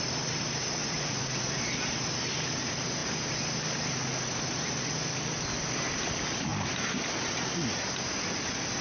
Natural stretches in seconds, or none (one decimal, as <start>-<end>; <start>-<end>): 0.0-0.8; 1.6-8.8